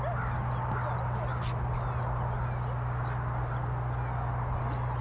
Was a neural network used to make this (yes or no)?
no